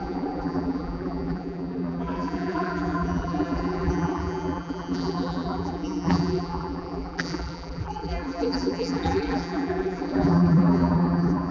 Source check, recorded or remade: remade